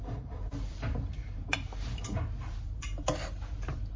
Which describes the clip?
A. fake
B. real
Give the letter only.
A